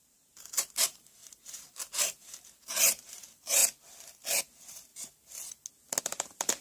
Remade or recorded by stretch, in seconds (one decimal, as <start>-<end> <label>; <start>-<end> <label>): 0.0-3.6 remade; 3.6-4.4 recorded; 4.4-4.9 remade; 4.9-6.0 recorded; 6.0-6.6 remade